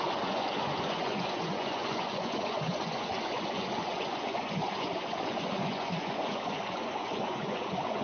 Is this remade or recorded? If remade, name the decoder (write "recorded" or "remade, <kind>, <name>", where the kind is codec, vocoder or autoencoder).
remade, vocoder, Vocos